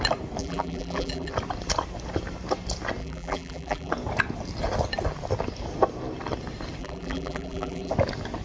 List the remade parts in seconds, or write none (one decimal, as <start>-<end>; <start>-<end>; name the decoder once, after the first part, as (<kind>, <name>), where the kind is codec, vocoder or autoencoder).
0.4-1.3 (vocoder, BigVGAN v2); 3.0-3.9; 6.8-7.9

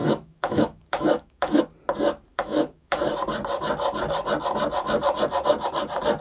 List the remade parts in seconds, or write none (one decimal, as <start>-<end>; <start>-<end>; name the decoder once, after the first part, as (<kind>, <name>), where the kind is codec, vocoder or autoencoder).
0.0-1.6 (autoencoder, DAC-VAE); 2.3-3.0

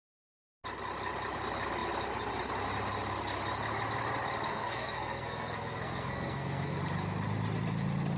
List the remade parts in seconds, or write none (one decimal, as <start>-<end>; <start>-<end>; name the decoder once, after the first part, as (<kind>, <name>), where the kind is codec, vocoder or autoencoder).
4.5-6.8 (codec, SNAC)

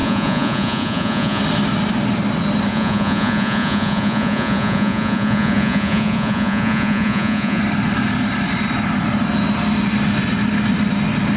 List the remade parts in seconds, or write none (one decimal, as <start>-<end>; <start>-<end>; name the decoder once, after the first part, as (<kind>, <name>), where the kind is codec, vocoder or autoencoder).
0.0-1.4 (vocoder, Vocos); 2.7-7.6

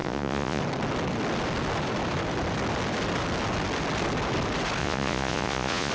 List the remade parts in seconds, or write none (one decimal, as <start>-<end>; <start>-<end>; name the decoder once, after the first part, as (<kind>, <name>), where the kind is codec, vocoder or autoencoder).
0.0-0.6 (vocoder, Vocos); 4.8-5.9

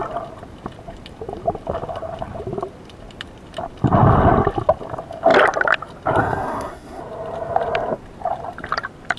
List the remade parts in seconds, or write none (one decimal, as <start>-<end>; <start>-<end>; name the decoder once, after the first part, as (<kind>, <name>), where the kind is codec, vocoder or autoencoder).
6.2-7.0 (codec, SNAC)

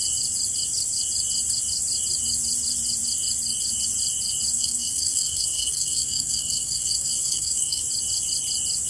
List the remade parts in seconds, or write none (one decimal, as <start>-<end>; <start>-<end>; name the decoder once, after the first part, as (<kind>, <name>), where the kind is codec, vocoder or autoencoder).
4.5-7.8 (codec, SNAC)

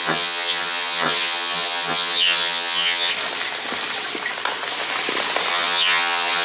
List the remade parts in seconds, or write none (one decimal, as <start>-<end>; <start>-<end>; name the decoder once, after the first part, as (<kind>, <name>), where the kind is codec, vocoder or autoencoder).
0.0-3.1 (vocoder, HiFi-GAN); 5.5-6.4